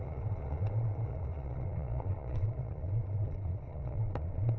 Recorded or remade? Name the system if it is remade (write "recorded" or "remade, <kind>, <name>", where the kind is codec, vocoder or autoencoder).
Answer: remade, vocoder, Vocos